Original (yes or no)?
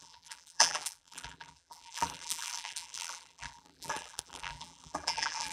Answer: no